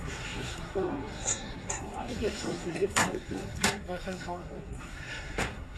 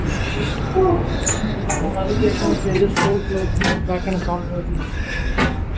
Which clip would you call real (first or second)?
second